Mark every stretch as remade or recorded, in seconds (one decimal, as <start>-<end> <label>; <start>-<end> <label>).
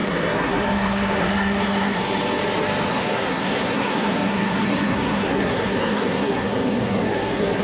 0.0-2.0 remade; 2.0-2.9 recorded; 2.9-7.6 remade